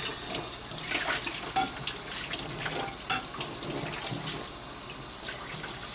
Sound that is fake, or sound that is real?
real